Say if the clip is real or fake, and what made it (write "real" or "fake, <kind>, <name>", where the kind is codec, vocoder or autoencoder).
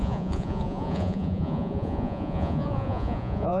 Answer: fake, vocoder, Vocos